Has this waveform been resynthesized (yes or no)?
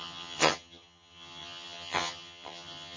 yes